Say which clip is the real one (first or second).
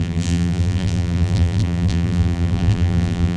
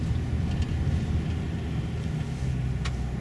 second